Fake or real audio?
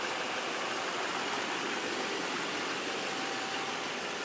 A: fake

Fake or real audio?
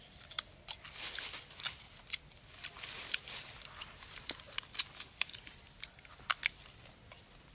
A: real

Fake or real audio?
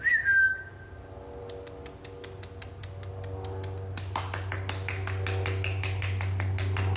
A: real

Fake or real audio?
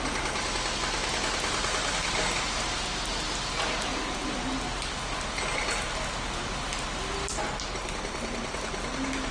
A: real